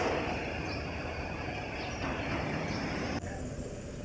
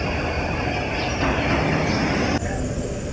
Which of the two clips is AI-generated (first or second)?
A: first